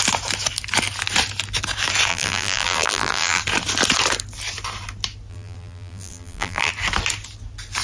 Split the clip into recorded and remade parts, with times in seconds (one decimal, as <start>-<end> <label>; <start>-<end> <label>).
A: 0.0-2.1 recorded; 2.1-3.4 remade; 3.4-5.3 recorded; 5.3-6.7 remade; 6.7-7.8 recorded